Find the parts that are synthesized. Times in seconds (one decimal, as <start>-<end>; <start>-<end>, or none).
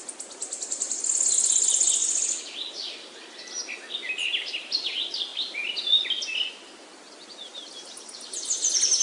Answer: none